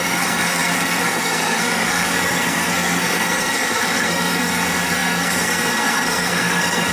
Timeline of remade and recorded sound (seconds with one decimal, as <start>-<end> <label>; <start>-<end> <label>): 0.0-6.9 remade